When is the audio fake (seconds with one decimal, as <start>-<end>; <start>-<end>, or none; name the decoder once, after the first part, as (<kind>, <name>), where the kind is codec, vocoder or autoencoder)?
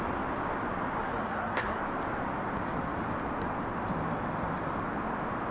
1.0-1.8 (codec, SNAC)